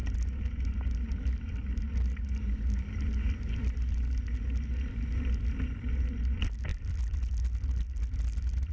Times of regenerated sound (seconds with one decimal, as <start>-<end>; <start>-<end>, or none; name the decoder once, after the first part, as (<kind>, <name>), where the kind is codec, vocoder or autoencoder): 6.7-8.7 (vocoder, BigVGAN v2)